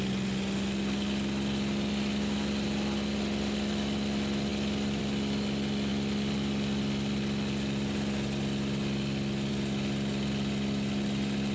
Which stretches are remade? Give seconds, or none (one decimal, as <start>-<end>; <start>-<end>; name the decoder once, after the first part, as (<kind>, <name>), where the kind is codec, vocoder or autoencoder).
none